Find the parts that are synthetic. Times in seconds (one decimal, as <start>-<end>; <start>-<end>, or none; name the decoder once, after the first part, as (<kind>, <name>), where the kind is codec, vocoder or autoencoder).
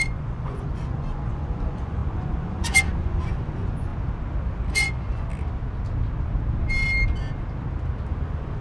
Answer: 0.0-3.9 (vocoder, Vocos); 4.7-5.3; 8.1-8.6